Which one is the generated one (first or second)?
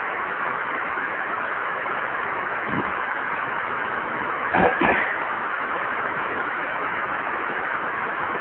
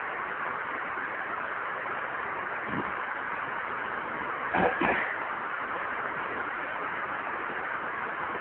first